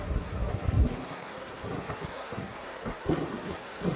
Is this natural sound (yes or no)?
no